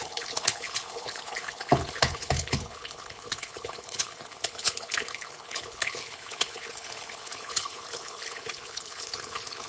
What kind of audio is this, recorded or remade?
remade